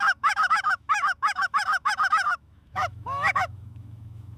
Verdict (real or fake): fake